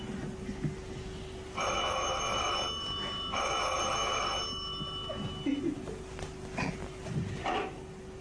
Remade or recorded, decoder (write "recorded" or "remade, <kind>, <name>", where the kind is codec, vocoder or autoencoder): recorded